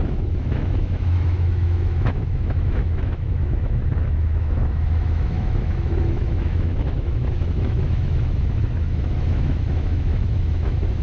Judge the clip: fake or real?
fake